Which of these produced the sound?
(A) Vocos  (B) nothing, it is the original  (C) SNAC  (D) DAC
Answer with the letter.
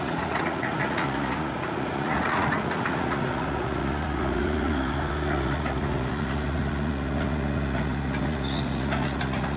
A